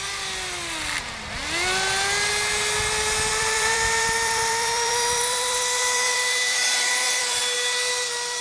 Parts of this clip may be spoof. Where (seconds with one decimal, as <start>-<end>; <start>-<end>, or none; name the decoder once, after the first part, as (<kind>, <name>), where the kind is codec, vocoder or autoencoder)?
3.3-7.4 (vocoder, BigVGAN v2)